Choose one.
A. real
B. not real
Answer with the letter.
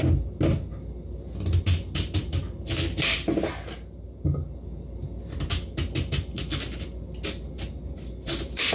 A